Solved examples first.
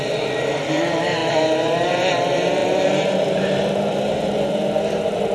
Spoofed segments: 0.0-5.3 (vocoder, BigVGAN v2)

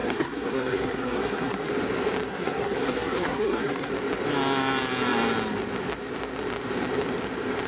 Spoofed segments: 0.0-1.7 (codec, SNAC); 2.3-3.9

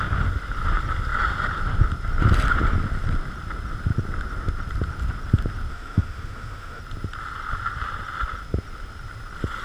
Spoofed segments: 5.7-6.8 (autoencoder, DAC-VAE)